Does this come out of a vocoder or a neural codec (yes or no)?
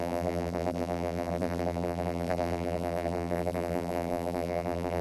yes